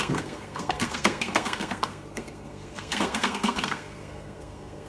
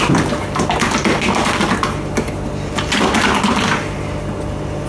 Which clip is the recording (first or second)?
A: second